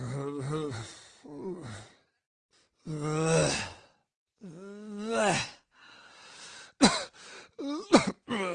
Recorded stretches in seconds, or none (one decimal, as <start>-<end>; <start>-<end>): 0.0-5.2; 6.1-8.5